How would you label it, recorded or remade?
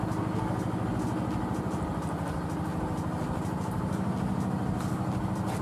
recorded